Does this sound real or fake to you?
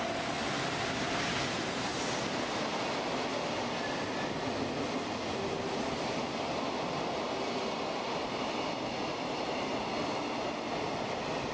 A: real